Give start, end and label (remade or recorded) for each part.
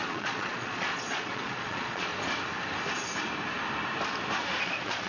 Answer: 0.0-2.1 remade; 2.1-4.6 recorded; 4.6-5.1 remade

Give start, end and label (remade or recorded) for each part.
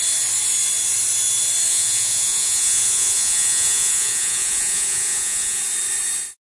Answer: 0.0-1.7 recorded; 1.7-5.6 remade; 5.6-6.5 recorded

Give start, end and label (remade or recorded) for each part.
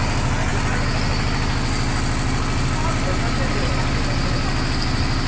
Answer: 0.0-5.3 recorded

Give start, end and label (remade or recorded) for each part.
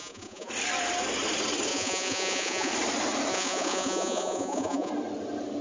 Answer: 0.0-0.5 remade; 0.5-1.7 recorded; 1.7-2.7 remade; 2.7-3.3 recorded; 3.3-4.9 remade; 4.9-5.6 recorded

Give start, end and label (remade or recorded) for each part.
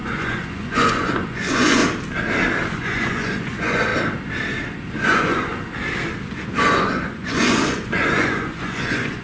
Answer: 0.0-1.8 remade; 1.8-2.7 recorded; 2.7-3.9 remade; 3.9-4.9 recorded; 4.9-5.5 remade; 5.5-6.6 recorded; 6.6-9.2 remade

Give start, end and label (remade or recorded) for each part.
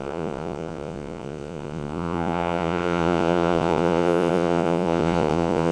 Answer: 0.0-5.7 remade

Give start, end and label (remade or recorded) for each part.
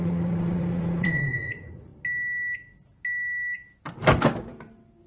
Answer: 0.0-1.9 remade; 1.9-5.1 recorded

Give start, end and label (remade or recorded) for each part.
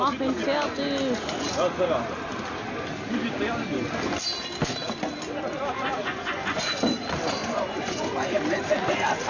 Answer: 0.0-6.0 recorded; 6.0-6.6 remade; 6.6-7.4 recorded; 7.4-8.1 remade; 8.1-9.3 recorded